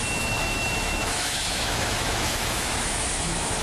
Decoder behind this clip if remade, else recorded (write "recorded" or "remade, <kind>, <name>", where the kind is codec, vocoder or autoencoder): remade, autoencoder, DAC-VAE